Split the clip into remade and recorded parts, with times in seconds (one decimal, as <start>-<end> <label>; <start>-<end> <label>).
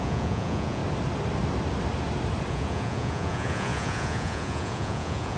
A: 0.0-0.8 remade; 0.8-2.5 recorded; 2.5-5.4 remade